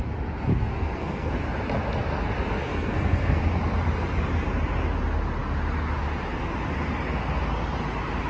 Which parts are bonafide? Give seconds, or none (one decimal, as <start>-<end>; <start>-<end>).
0.0-0.5; 1.4-2.7; 3.4-8.3